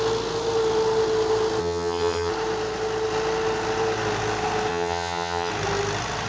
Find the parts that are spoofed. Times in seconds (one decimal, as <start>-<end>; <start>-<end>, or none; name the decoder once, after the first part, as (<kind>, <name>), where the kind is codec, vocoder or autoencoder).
1.6-2.3 (vocoder, HiFi-GAN); 4.7-5.5